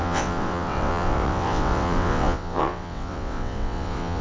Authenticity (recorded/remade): remade